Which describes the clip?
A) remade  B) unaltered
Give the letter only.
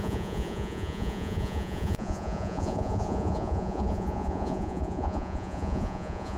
A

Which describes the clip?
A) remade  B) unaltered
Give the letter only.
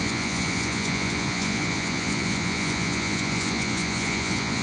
A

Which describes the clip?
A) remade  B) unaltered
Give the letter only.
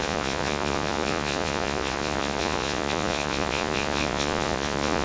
A